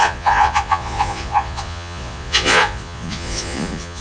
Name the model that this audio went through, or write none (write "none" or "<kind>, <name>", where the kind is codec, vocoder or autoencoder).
vocoder, Vocos